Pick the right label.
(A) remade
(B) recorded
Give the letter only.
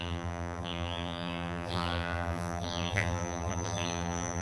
A